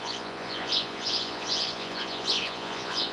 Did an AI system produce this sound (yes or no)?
yes